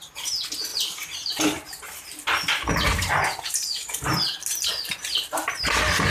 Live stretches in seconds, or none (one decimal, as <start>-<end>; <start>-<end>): 0.0-6.1